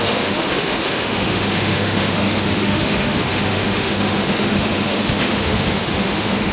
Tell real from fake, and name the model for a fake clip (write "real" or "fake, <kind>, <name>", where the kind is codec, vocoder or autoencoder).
fake, autoencoder, DAC-VAE